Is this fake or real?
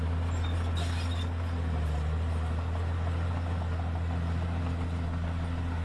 real